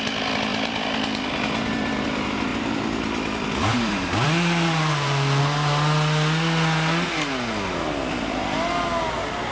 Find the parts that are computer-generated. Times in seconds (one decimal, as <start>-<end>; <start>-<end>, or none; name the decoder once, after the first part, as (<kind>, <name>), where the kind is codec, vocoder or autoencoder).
0.5-1.7 (vocoder, BigVGAN v2); 2.5-5.4